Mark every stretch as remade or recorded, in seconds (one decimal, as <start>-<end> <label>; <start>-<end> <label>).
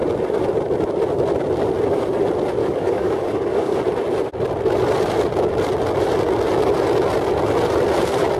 0.0-2.6 recorded; 2.6-3.8 remade; 3.8-8.4 recorded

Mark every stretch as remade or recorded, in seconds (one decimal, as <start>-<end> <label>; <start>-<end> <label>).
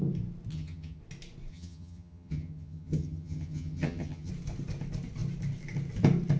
0.0-0.5 recorded; 0.5-1.0 remade; 1.0-1.5 recorded; 1.5-4.3 remade; 4.3-6.4 recorded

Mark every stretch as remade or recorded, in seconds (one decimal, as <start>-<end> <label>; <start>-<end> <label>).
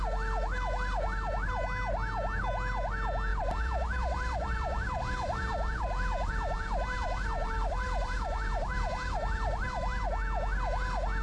0.0-3.3 recorded; 3.3-5.0 remade; 5.0-5.5 recorded; 5.5-10.0 remade; 10.0-11.2 recorded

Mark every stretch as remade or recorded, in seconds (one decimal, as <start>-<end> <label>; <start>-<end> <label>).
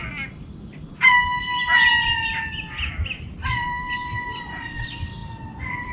0.0-3.4 recorded; 3.4-4.8 remade; 4.8-5.2 recorded; 5.2-5.9 remade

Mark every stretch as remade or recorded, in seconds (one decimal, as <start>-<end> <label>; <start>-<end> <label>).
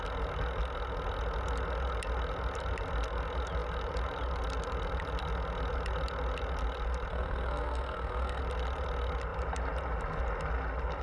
0.0-7.1 recorded; 7.1-8.4 remade; 8.4-11.0 recorded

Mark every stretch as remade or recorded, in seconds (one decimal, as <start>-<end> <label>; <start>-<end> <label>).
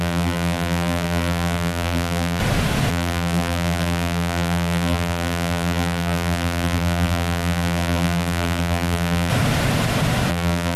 0.0-2.4 remade; 2.4-2.9 recorded; 2.9-9.3 remade; 9.3-10.3 recorded; 10.3-10.8 remade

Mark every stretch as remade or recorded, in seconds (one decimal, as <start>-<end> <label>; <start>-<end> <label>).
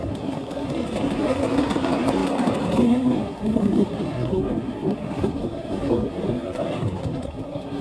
0.0-7.8 remade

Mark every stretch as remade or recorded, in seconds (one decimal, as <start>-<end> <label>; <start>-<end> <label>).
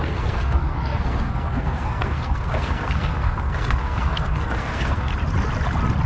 0.0-5.1 remade; 5.1-6.1 recorded